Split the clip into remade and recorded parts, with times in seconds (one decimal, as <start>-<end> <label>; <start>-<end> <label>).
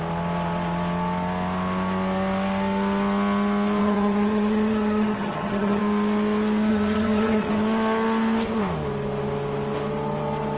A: 0.0-3.8 recorded; 3.8-5.8 remade; 5.8-6.7 recorded; 6.7-7.5 remade; 7.5-10.6 recorded